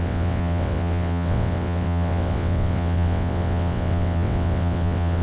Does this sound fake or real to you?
fake